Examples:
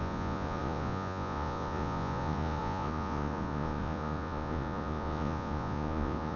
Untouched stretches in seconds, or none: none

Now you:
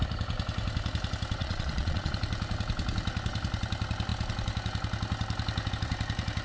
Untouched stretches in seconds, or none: 0.0-1.4; 2.1-6.4

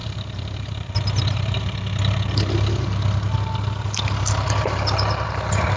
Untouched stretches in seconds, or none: 1.6-5.8